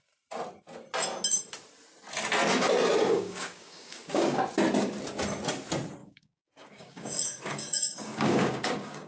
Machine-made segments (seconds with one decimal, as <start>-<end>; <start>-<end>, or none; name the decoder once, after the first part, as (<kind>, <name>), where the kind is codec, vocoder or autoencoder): 3.1-4.4 (codec, DAC); 6.0-9.1